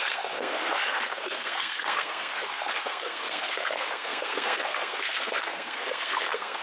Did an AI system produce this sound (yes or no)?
yes